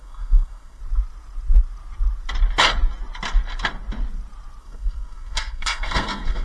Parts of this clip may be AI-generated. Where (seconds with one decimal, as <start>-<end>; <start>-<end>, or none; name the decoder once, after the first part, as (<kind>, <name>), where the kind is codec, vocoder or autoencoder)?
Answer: 0.0-0.8 (codec, SNAC); 4.6-6.4